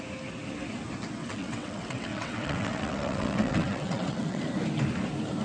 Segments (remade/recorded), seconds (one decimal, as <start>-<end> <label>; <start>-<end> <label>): 0.0-1.2 recorded; 1.2-4.4 remade; 4.4-5.4 recorded